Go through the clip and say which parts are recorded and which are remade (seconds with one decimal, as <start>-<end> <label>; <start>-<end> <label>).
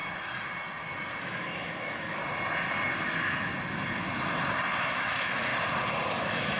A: 0.0-1.2 recorded; 1.2-2.2 remade; 2.2-4.8 recorded; 4.8-5.5 remade; 5.5-6.1 recorded; 6.1-6.6 remade